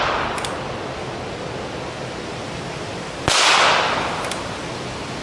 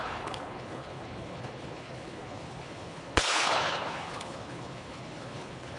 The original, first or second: first